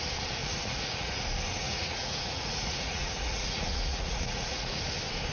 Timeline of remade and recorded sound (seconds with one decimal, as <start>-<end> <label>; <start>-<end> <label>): 0.0-0.4 recorded; 0.4-1.2 remade; 1.2-1.6 recorded; 1.6-4.8 remade; 4.8-5.3 recorded